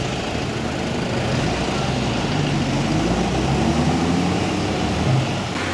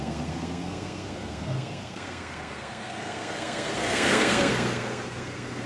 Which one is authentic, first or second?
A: first